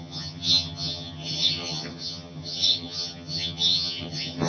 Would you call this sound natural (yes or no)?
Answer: no